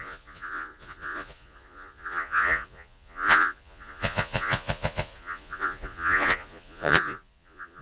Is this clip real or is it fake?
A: fake